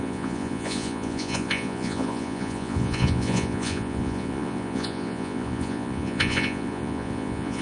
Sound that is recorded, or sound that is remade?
remade